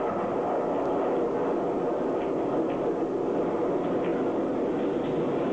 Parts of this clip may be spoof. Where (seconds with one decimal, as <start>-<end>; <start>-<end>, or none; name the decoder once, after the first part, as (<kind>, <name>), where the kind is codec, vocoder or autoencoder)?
none